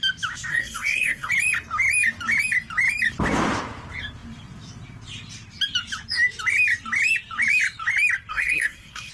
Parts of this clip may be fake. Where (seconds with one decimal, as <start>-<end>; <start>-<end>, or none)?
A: 0.5-1.3; 8.3-9.1